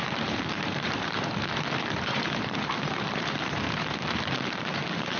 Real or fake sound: fake